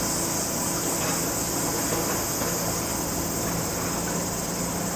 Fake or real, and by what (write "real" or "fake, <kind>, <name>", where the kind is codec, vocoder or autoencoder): real